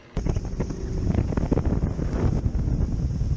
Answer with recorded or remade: recorded